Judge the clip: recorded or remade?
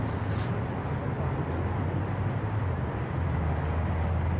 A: recorded